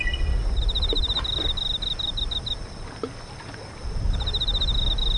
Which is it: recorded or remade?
recorded